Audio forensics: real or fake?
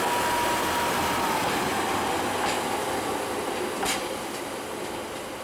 real